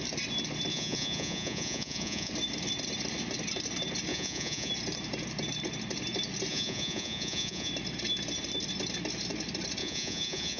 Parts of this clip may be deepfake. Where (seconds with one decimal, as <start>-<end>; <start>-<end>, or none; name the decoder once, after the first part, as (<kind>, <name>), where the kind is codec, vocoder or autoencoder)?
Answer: 0.7-2.3 (vocoder, Vocos); 4.1-4.7; 6.5-7.7; 9.8-10.6

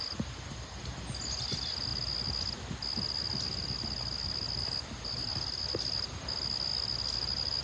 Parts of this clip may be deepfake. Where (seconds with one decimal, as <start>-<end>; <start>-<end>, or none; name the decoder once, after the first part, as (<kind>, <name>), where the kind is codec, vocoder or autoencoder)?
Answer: none

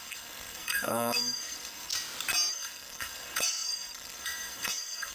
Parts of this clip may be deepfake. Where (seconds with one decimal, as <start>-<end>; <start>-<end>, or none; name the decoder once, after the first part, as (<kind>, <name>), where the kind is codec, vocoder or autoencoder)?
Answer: 0.0-1.9 (codec, SNAC); 2.5-5.1

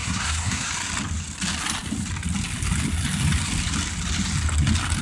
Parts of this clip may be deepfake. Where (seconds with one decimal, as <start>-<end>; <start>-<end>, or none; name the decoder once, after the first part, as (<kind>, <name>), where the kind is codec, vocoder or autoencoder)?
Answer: 0.0-0.7 (codec, SNAC)

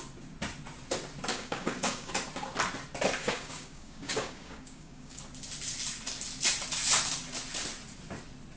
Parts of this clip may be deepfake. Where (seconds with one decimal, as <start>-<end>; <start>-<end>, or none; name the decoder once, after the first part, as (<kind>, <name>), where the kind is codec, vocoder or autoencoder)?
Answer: 1.3-2.1 (codec, DAC); 3.2-5.2

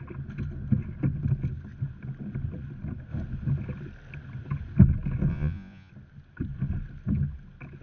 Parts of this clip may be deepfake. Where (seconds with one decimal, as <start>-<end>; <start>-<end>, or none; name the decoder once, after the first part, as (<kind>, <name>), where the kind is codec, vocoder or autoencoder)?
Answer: 5.3-5.9 (vocoder, Vocos)